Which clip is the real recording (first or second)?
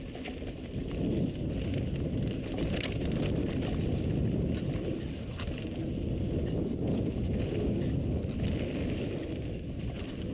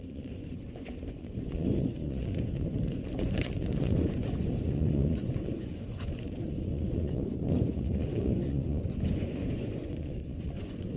first